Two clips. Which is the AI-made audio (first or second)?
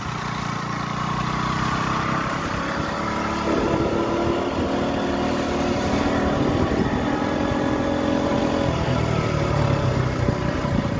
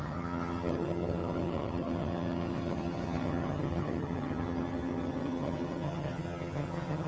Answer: second